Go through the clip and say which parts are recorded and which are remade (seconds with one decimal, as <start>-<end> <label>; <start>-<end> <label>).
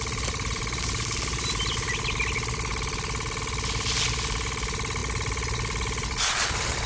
0.0-6.9 recorded